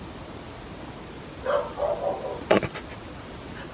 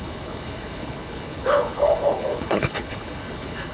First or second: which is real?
first